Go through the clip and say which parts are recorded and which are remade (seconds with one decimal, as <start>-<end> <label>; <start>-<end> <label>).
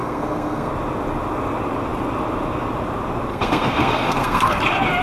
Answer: 0.0-0.7 remade; 0.7-3.3 recorded; 3.3-4.6 remade; 4.6-5.0 recorded